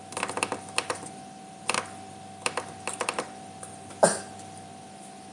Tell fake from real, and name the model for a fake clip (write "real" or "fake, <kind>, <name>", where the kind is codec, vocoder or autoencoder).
real